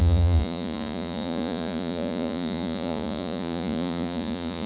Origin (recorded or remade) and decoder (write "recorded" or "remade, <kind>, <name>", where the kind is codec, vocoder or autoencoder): remade, vocoder, Vocos